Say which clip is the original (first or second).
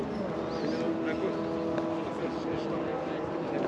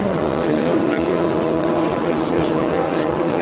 first